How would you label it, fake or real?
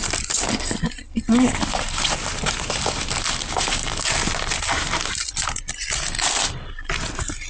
real